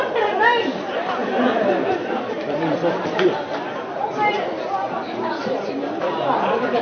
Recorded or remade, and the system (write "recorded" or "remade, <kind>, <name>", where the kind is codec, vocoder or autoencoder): remade, vocoder, BigVGAN v2